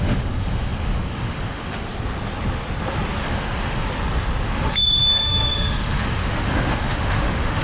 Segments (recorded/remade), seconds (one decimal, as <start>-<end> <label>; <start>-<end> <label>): 0.0-1.9 remade; 1.9-3.2 recorded; 3.2-3.8 remade; 3.8-4.4 recorded; 4.4-7.6 remade